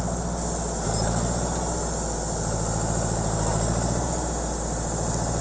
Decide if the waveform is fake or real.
real